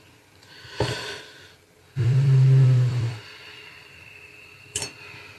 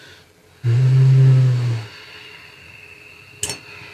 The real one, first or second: second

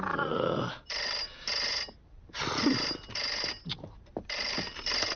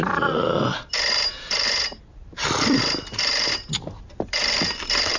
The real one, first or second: first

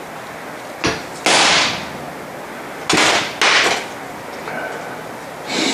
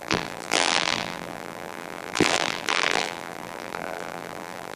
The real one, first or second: first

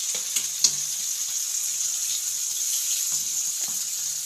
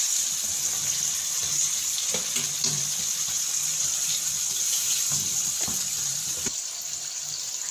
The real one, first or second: first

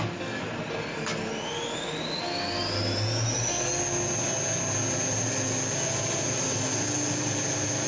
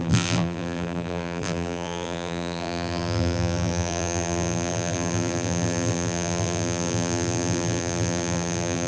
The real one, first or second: first